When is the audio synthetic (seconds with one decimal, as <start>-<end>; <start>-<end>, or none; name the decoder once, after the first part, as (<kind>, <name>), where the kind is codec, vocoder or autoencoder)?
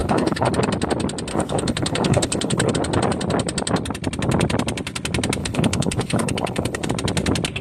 0.0-0.5 (codec, HILCodec); 1.3-2.7; 5.4-6.9